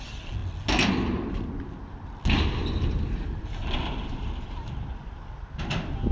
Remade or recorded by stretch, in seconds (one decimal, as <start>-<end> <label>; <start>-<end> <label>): 0.0-2.6 recorded; 2.6-3.4 remade; 3.4-6.1 recorded

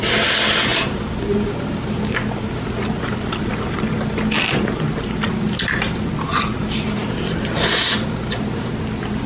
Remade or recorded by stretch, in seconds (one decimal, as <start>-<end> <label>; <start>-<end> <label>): 0.0-0.7 recorded; 0.7-2.1 remade; 2.1-9.3 recorded

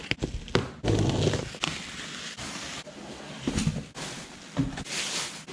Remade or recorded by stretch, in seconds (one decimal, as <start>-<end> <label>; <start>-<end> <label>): 0.0-5.5 recorded

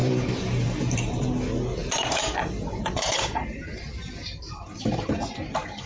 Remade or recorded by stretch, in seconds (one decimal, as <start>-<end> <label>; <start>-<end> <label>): 0.0-1.3 remade; 1.3-1.8 recorded; 1.8-5.3 remade; 5.3-5.9 recorded

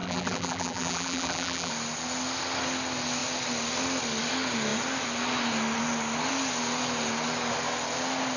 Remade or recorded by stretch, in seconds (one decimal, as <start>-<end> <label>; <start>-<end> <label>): 0.0-1.7 remade; 1.7-8.4 recorded